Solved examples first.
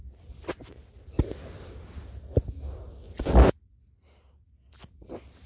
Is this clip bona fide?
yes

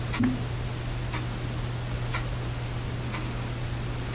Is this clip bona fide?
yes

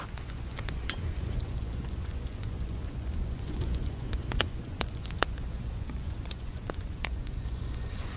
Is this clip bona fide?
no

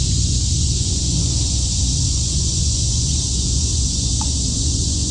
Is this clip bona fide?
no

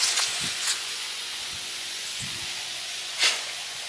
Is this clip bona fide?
no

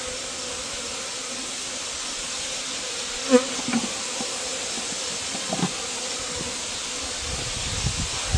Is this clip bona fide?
yes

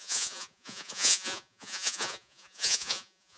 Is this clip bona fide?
no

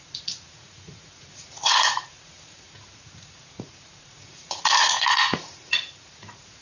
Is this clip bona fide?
no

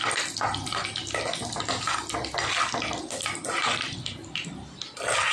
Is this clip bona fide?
yes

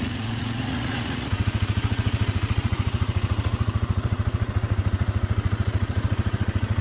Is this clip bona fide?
no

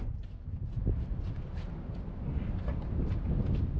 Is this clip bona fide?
yes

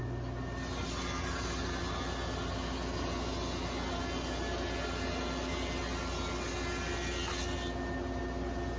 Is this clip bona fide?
yes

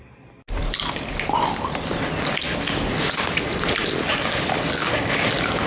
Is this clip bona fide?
yes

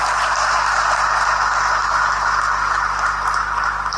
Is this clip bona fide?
yes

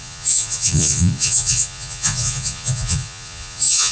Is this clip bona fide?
no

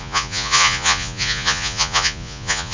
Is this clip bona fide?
no